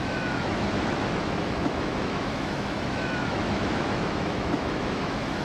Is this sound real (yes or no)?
no